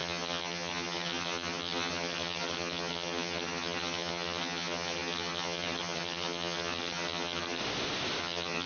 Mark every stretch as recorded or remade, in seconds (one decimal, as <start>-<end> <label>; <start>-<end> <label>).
0.0-7.6 remade; 7.6-8.2 recorded; 8.2-8.7 remade